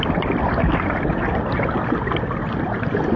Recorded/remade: recorded